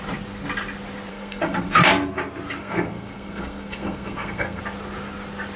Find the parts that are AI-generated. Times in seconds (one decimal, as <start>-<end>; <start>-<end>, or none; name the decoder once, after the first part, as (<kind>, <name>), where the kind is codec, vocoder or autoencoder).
1.1-1.9 (codec, SNAC); 2.6-4.6